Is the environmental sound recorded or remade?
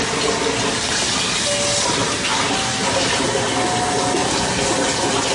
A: recorded